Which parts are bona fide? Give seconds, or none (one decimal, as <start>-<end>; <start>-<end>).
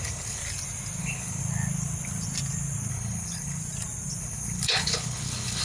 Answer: 0.4-1.0; 1.4-2.9; 3.6-4.2